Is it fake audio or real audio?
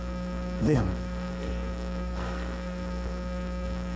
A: fake